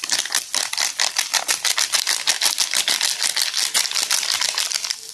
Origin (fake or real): fake